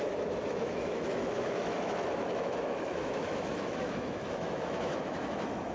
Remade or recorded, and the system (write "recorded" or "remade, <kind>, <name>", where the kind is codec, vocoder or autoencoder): remade, autoencoder, DAC-VAE